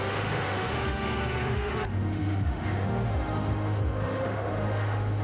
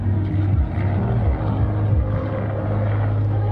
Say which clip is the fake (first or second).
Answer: first